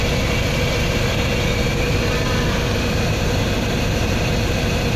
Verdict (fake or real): real